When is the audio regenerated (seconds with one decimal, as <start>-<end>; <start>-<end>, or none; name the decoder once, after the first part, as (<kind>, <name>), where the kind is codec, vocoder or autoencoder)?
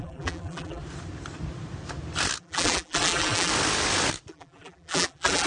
0.0-0.8 (vocoder, BigVGAN v2); 2.4-3.5; 4.3-5.5